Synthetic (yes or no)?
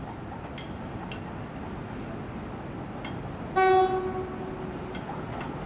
no